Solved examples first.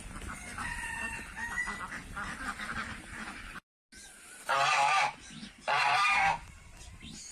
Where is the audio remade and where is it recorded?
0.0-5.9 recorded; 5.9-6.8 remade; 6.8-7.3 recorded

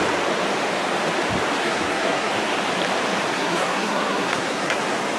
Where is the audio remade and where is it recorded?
0.0-1.6 recorded; 1.6-2.3 remade; 2.3-3.3 recorded; 3.3-4.8 remade; 4.8-5.2 recorded

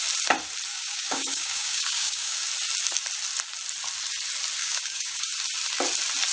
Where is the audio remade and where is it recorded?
0.0-0.7 recorded; 0.7-2.5 remade; 2.5-4.6 recorded; 4.6-5.3 remade; 5.3-6.3 recorded

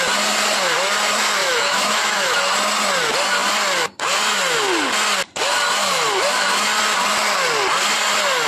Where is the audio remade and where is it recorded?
0.0-1.4 recorded; 1.4-2.4 remade; 2.4-8.5 recorded

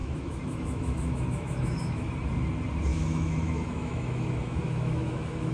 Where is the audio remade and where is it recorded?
0.0-2.1 remade; 2.1-2.9 recorded; 2.9-5.5 remade

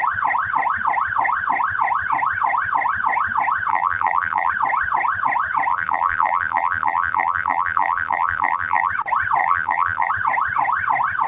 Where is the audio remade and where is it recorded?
0.0-3.7 recorded; 3.7-4.5 remade; 4.5-5.7 recorded; 5.7-8.9 remade; 8.9-9.4 recorded; 9.4-10.1 remade; 10.1-11.3 recorded

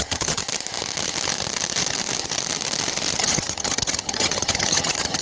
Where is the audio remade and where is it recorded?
0.0-0.4 remade; 0.4-3.2 recorded; 3.2-5.2 remade